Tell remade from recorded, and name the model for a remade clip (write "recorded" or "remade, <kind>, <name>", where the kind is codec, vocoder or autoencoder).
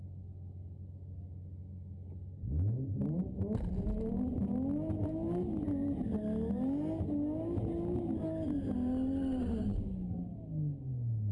recorded